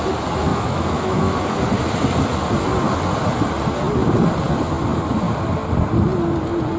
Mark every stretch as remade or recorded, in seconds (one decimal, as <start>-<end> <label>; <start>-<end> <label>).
0.0-0.5 recorded; 0.5-1.3 remade; 1.3-6.8 recorded

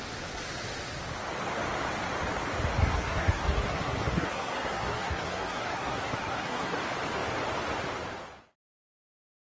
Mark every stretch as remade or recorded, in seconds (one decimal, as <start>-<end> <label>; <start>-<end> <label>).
0.0-2.8 recorded; 2.8-6.8 remade; 6.8-9.5 recorded

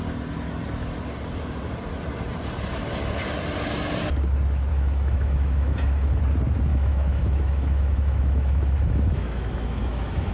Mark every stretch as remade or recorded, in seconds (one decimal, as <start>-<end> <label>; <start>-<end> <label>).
0.0-4.7 recorded; 4.7-6.2 remade; 6.2-6.7 recorded; 6.7-10.3 remade

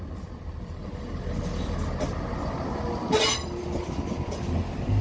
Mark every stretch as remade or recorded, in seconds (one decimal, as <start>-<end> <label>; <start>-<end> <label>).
0.0-5.0 recorded

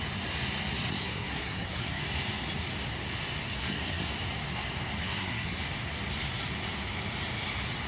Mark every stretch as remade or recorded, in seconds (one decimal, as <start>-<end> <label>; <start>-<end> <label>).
0.0-0.9 recorded; 0.9-2.0 remade; 2.0-3.6 recorded; 3.6-4.1 remade; 4.1-5.0 recorded; 5.0-5.6 remade; 5.6-7.9 recorded

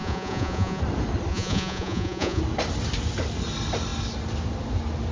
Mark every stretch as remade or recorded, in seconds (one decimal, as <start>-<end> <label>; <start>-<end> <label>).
0.0-0.8 remade; 0.8-1.3 recorded; 1.3-2.4 remade; 2.4-5.1 recorded

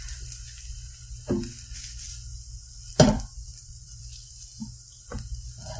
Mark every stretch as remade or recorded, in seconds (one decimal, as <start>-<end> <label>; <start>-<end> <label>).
0.0-3.5 recorded; 3.5-4.3 remade; 4.3-5.8 recorded

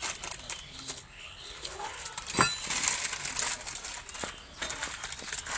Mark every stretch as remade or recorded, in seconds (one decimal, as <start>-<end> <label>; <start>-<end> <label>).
0.0-0.7 recorded; 0.7-2.0 remade; 2.0-5.6 recorded